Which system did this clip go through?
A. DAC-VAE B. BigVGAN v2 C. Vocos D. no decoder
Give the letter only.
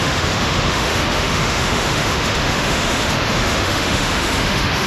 A